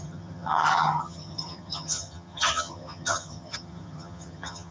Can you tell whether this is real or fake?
fake